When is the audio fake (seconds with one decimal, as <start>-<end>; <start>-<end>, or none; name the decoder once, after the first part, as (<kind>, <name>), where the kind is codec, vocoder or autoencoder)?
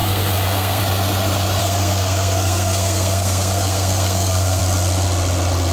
0.0-0.8 (codec, SNAC); 1.6-4.6